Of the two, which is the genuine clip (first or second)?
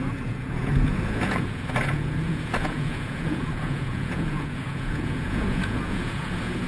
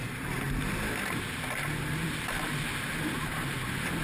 second